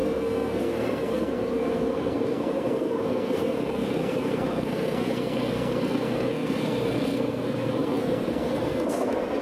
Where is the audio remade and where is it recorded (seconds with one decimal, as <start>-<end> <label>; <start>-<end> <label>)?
0.0-9.4 remade